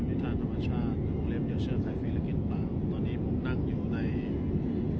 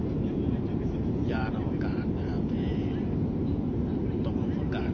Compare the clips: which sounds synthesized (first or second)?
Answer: second